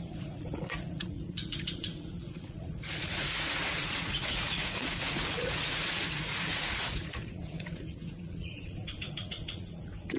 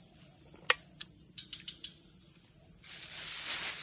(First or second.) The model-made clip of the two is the first